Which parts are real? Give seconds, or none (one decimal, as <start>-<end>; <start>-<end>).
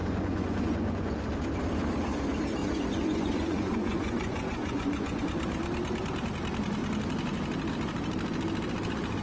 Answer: 1.2-2.6; 5.2-9.2